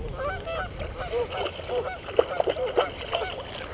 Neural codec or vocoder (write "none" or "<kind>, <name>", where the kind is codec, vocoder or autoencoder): none